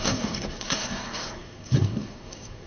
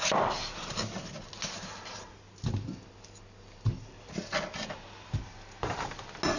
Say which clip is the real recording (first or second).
second